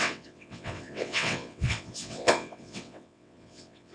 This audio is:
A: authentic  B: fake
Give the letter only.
B